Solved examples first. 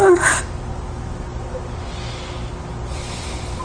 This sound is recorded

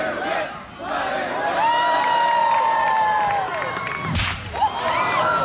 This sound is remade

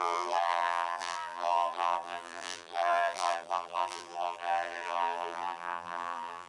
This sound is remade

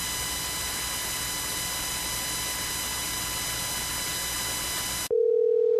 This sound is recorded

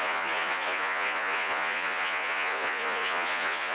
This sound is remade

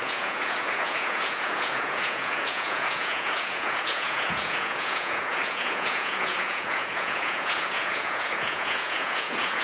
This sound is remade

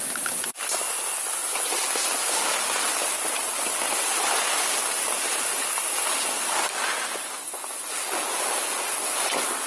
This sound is recorded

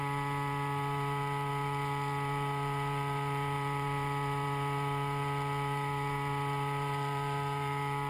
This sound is remade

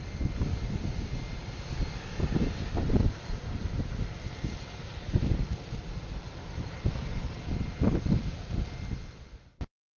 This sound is recorded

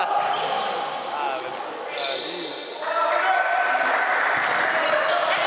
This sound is recorded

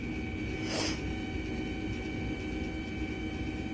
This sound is recorded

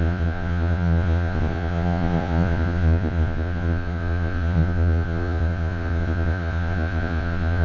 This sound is remade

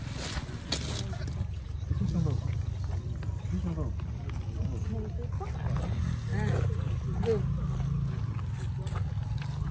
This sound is recorded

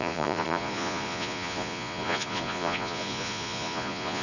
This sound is remade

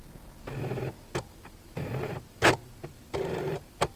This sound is remade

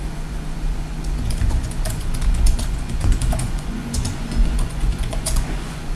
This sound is remade